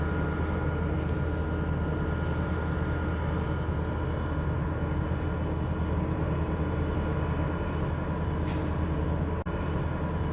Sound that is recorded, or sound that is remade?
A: recorded